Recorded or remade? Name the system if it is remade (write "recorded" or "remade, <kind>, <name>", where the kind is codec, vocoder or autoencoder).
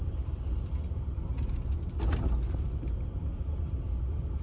recorded